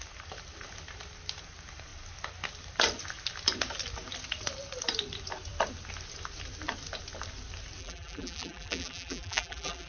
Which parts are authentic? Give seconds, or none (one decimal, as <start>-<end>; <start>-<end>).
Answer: 0.0-7.8